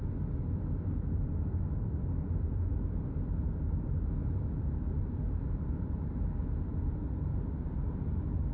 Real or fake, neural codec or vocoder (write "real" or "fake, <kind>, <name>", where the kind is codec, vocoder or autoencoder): real